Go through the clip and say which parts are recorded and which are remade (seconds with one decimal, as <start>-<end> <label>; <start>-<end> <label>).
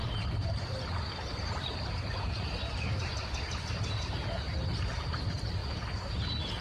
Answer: 0.0-5.6 remade; 5.6-6.6 recorded